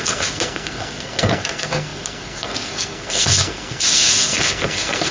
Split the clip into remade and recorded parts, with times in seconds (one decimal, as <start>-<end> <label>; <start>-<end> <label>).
0.0-5.1 remade